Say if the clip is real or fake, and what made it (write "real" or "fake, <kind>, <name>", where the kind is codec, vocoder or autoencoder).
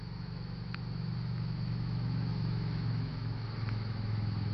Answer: fake, autoencoder, DAC-VAE